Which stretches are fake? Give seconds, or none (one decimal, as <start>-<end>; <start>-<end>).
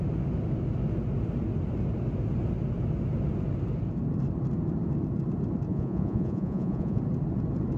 5.7-7.0